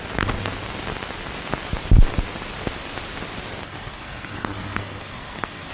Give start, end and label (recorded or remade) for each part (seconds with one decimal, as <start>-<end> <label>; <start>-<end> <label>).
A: 0.0-3.6 recorded; 3.6-5.7 remade